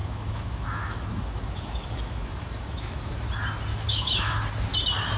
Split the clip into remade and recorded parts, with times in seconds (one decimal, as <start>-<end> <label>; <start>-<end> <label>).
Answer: 0.0-3.1 remade; 3.1-3.7 recorded; 3.7-4.4 remade; 4.4-5.2 recorded